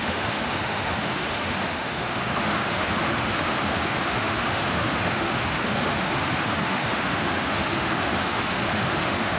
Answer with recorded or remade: remade